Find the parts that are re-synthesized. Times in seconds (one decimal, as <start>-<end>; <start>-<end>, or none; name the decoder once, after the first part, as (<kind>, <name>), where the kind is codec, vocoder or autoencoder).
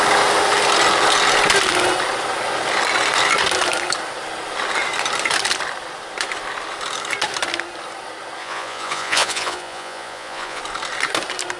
8.4-10.6 (vocoder, Vocos)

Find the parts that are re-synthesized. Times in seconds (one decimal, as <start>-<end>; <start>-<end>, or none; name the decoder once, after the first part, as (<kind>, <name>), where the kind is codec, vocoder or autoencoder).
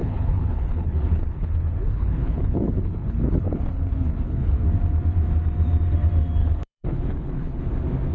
0.0-4.6 (codec, HILCodec); 6.4-7.6